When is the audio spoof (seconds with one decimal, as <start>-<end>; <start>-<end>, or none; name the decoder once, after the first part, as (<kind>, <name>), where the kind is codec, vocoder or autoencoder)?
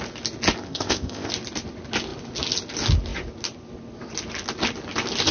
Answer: 0.6-1.3 (codec, ZipCodec)